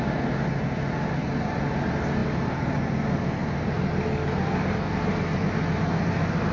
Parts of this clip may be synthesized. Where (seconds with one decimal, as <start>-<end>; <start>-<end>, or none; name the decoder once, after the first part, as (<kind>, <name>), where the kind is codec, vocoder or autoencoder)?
none